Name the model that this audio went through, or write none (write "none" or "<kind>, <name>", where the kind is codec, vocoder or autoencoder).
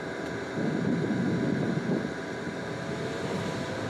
none